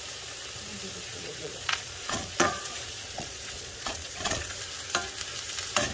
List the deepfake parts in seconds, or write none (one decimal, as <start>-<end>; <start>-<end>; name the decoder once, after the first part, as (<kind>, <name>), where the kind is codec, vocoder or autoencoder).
1.1-4.6 (vocoder, Vocos)

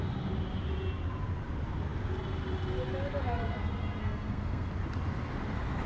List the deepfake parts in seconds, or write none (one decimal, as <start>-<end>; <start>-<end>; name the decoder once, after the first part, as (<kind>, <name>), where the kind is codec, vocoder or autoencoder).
4.0-4.7 (codec, SNAC)

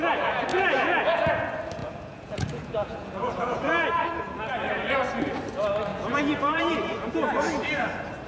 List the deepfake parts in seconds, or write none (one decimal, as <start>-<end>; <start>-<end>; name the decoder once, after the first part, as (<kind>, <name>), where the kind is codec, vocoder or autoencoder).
0.5-1.3 (vocoder, Vocos); 1.8-3.8; 5.9-7.1

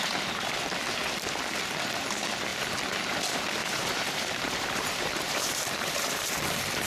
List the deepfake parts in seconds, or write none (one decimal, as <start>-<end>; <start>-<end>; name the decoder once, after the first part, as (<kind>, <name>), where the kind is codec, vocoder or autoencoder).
3.6-6.3 (vocoder, BigVGAN v2)